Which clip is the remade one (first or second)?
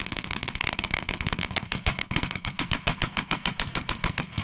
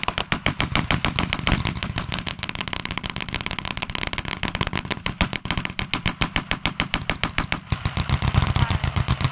first